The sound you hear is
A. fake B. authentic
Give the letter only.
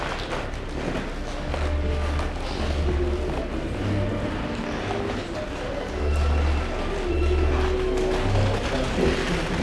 B